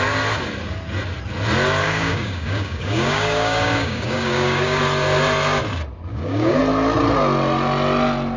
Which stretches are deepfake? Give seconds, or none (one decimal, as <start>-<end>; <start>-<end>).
1.8-4.8; 6.1-6.6